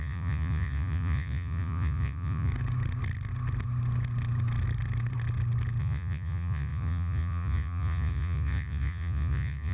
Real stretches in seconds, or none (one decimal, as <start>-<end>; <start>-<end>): 2.5-5.8

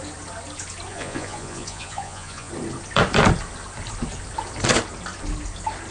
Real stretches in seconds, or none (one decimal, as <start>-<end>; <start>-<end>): 0.0-0.9; 2.5-5.9

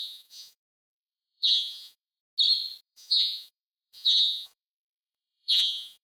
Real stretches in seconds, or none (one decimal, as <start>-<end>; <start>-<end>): 2.2-2.8

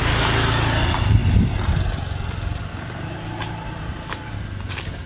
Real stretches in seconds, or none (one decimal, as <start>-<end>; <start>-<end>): 0.0-5.1

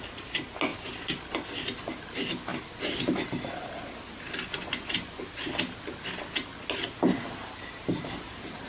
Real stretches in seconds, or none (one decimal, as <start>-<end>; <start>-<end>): 0.0-4.5; 5.2-8.7